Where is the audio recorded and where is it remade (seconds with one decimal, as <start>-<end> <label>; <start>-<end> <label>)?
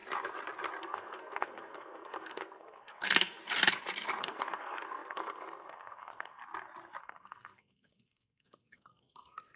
0.0-0.8 recorded; 0.8-3.4 remade; 3.4-4.2 recorded; 4.2-6.4 remade; 6.4-7.0 recorded; 7.0-9.6 remade